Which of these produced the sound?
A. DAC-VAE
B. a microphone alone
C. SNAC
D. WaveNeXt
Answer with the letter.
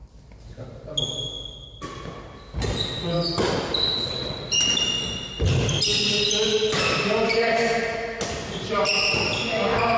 B